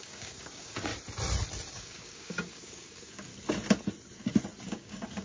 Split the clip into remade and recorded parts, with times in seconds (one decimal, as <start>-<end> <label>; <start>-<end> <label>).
0.0-0.9 remade; 0.9-1.7 recorded; 1.7-3.3 remade; 3.3-4.6 recorded; 4.6-5.2 remade